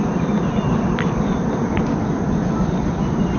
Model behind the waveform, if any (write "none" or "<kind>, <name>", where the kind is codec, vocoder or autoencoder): none